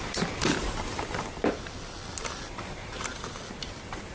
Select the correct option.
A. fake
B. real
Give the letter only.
B